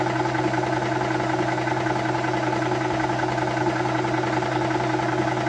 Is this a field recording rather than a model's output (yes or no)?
yes